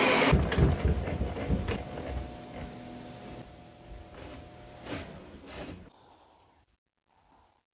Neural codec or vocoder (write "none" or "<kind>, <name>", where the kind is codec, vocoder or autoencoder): none